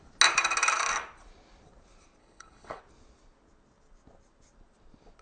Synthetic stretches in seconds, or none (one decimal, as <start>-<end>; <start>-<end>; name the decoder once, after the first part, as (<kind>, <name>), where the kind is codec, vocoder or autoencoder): 2.2-2.8 (codec, HILCodec)